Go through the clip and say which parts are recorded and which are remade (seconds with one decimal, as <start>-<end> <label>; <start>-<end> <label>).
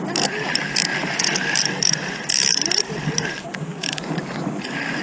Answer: 0.0-3.4 recorded; 3.4-4.0 remade; 4.0-5.0 recorded